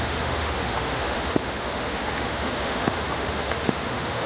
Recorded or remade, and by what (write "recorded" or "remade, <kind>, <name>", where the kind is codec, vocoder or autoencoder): remade, autoencoder, DAC-VAE